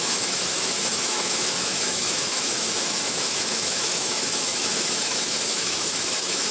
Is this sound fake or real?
fake